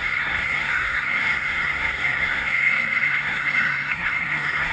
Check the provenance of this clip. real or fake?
fake